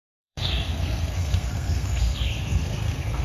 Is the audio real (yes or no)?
no